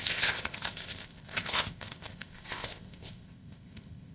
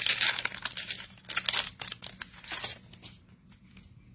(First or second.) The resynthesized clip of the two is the first